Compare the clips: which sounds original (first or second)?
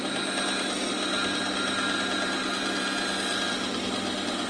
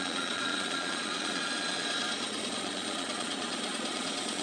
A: first